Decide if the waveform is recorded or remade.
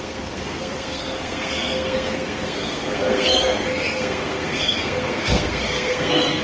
remade